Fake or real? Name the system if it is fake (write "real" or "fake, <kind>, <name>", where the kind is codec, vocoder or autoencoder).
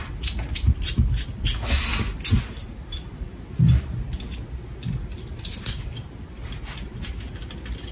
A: real